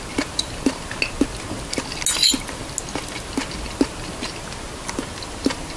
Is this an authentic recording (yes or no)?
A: yes